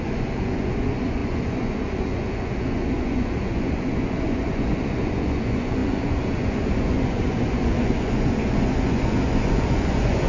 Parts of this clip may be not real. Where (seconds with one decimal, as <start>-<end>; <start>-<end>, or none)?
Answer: 0.0-10.3